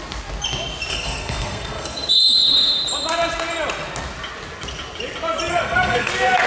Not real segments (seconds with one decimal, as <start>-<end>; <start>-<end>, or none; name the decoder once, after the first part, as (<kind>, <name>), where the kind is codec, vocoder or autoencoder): 0.9-2.1 (codec, SNAC); 5.5-6.1